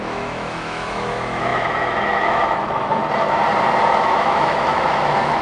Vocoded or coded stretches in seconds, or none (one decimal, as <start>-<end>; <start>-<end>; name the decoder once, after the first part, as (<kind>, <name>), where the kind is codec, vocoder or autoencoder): 0.0-3.0 (autoencoder, DAC-VAE); 4.0-5.4